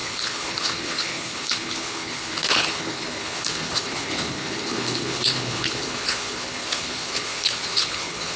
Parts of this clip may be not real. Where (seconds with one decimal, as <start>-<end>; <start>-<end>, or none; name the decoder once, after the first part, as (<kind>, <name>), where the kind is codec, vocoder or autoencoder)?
0.0-8.4 (codec, HILCodec)